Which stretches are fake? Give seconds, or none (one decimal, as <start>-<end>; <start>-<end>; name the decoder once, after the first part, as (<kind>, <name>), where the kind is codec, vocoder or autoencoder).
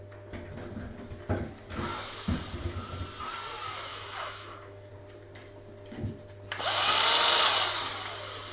3.9-4.9 (autoencoder, DAC-VAE)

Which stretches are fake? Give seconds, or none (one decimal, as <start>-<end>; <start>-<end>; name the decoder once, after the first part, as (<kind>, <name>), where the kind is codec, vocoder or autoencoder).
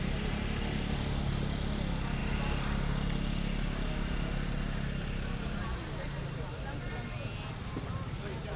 none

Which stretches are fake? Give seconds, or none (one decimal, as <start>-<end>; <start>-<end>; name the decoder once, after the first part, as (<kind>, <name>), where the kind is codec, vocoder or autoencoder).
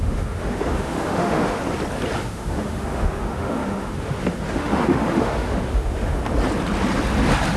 0.0-1.6 (autoencoder, DAC-VAE); 2.2-6.2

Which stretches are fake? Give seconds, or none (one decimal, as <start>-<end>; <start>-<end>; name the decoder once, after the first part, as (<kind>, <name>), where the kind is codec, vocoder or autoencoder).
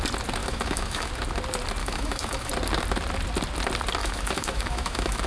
0.4-1.1 (autoencoder, DAC-VAE); 1.8-2.5; 4.0-5.3